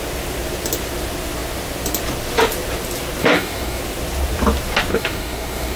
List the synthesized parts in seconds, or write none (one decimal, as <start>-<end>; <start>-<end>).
3.2-3.8; 4.9-5.8